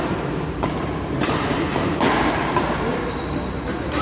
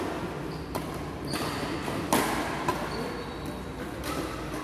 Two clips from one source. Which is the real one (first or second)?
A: second